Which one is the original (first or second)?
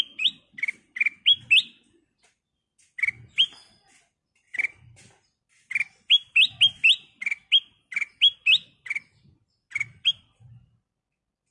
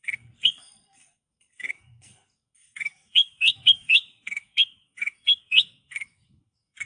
first